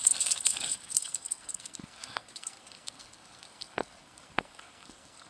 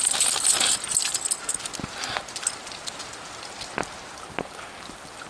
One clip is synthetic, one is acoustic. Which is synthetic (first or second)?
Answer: first